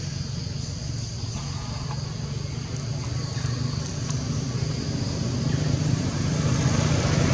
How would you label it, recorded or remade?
recorded